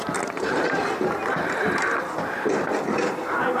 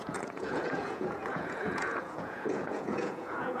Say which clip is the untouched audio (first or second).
first